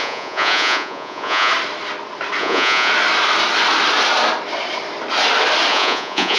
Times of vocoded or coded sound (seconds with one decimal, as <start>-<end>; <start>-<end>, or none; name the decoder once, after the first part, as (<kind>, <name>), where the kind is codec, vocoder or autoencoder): 0.0-1.5 (vocoder, Vocos); 2.4-2.9; 5.7-6.4